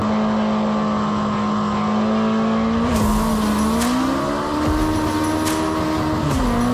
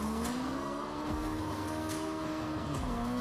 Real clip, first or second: first